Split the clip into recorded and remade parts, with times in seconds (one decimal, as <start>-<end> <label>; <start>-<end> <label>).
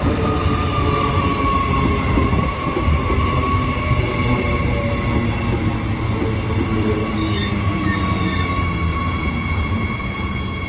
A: 0.0-8.9 recorded; 8.9-10.7 remade